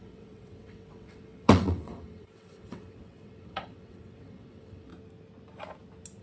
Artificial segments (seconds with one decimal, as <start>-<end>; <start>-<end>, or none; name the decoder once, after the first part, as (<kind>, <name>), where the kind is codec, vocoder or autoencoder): 0.0-4.9 (vocoder, WaveNeXt)